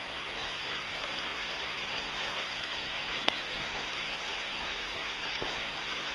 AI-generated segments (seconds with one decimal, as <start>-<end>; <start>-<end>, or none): 0.0-6.1